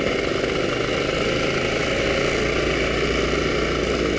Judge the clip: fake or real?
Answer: real